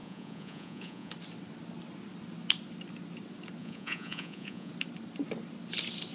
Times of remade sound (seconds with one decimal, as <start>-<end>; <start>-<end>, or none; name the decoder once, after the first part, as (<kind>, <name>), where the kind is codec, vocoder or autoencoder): 0.0-1.1 (vocoder, Vocos); 3.6-4.7